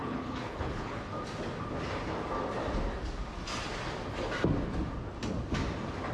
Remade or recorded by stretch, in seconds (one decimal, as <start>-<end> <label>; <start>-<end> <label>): 0.0-1.0 remade; 1.0-6.1 recorded